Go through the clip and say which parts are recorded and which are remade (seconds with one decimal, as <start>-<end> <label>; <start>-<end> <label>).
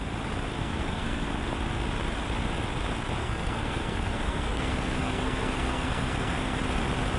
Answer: 0.0-0.6 recorded; 0.6-1.3 remade; 1.3-3.2 recorded; 3.2-6.6 remade; 6.6-7.2 recorded